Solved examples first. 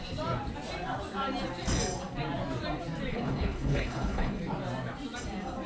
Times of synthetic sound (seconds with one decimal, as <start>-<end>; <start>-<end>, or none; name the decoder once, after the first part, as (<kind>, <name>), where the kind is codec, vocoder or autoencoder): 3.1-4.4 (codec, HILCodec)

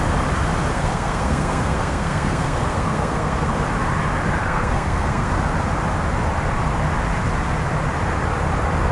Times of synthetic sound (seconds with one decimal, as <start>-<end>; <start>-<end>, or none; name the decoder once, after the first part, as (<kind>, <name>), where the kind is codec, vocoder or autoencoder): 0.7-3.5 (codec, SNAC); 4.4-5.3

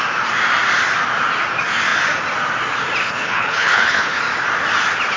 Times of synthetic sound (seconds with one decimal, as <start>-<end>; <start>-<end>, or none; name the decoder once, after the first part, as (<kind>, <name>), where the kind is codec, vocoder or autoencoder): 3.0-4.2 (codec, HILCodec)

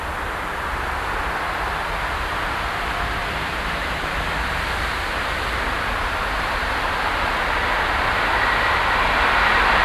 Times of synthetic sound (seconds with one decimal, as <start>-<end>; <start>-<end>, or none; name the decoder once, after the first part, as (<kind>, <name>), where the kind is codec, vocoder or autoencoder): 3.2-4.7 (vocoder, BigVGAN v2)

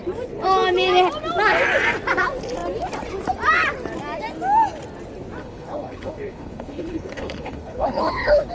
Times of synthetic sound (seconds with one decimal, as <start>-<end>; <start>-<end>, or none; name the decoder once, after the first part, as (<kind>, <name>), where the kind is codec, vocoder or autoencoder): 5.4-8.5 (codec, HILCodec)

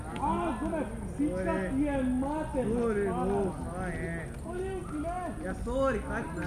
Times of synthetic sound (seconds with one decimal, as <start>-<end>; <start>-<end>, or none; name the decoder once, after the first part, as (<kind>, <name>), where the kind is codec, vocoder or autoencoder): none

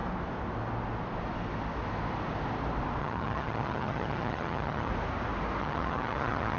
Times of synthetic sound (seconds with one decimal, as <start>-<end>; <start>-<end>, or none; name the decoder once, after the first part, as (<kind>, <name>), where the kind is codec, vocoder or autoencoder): 3.0-4.9 (vocoder, HiFi-GAN); 5.6-6.6

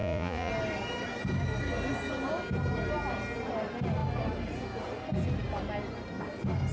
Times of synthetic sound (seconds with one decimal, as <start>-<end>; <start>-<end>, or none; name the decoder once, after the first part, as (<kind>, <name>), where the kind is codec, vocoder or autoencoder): 0.0-0.5 (vocoder, Vocos)